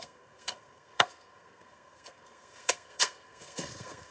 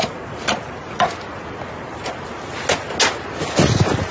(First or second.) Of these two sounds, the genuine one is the second